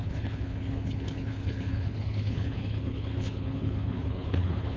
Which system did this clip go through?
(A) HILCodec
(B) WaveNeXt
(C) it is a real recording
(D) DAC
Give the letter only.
A